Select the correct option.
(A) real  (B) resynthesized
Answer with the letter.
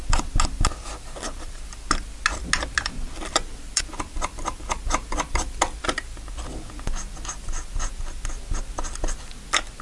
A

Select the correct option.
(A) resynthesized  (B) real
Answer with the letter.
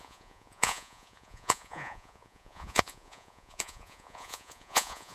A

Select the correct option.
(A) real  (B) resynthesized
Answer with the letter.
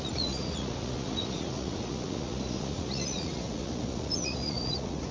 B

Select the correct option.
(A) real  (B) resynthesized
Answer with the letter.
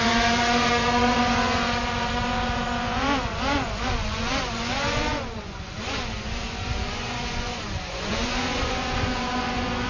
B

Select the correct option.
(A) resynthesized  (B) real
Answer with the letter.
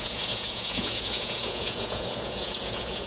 A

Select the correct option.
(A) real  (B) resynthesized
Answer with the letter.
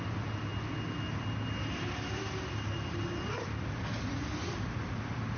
A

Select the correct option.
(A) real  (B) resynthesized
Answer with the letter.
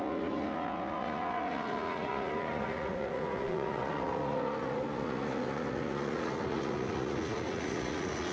B